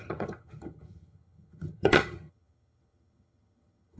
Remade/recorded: remade